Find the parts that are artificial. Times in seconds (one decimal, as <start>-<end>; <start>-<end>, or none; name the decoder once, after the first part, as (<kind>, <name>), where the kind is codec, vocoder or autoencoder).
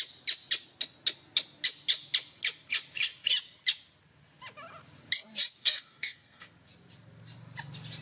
5.6-6.5 (codec, SNAC)